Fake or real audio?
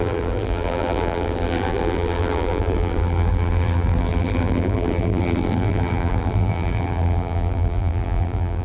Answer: fake